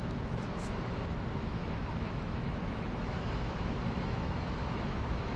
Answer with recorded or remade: remade